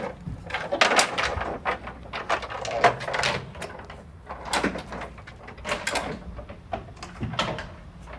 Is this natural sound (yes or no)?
yes